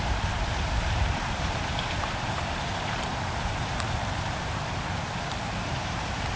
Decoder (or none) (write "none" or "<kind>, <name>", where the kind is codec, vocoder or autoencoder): vocoder, BigVGAN v2